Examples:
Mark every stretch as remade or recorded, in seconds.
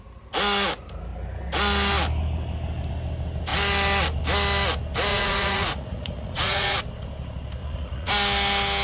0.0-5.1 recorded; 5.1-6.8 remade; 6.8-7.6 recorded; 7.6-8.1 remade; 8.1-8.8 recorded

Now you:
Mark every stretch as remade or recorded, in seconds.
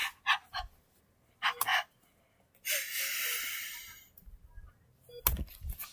0.0-5.9 recorded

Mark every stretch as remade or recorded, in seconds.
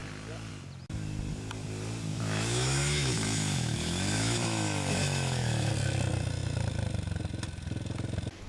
0.0-2.1 recorded; 2.1-5.7 remade; 5.7-8.5 recorded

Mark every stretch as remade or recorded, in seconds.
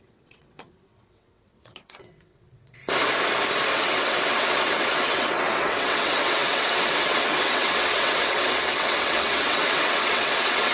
0.0-2.8 remade; 2.8-3.7 recorded; 3.7-10.7 remade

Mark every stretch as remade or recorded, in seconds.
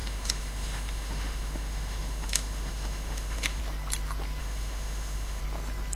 0.0-3.6 remade; 3.6-4.4 recorded; 4.4-5.4 remade; 5.4-6.0 recorded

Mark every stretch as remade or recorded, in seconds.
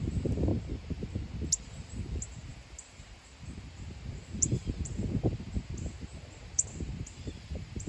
0.0-0.5 remade; 0.5-1.6 recorded; 1.6-7.9 remade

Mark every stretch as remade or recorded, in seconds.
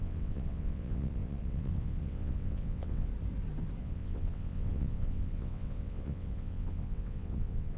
0.0-3.1 remade; 3.1-3.8 recorded; 3.8-7.8 remade